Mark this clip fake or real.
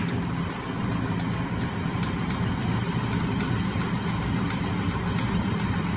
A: real